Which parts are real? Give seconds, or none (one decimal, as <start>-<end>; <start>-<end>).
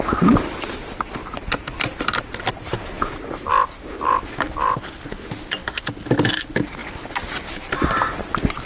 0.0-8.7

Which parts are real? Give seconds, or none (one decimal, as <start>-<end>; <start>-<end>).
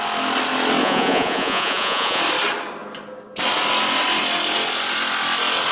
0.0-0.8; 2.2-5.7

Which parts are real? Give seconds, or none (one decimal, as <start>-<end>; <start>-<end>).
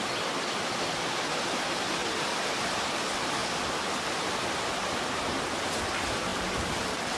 0.0-7.2